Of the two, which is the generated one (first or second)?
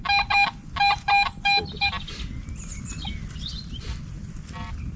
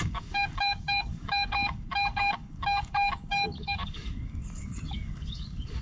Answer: second